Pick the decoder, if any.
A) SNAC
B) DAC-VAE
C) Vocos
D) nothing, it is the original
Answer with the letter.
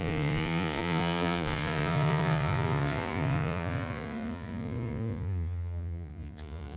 C